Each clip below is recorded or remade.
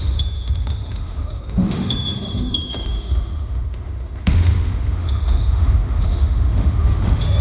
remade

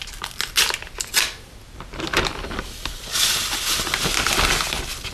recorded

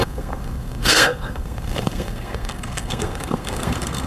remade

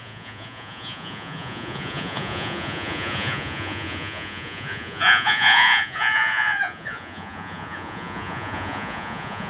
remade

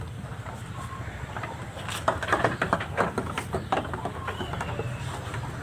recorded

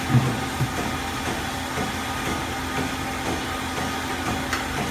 recorded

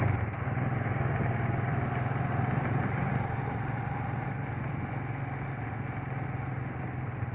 recorded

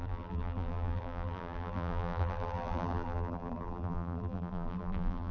remade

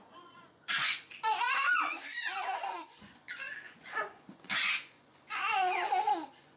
remade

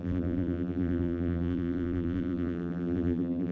remade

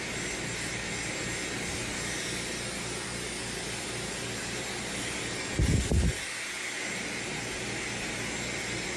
recorded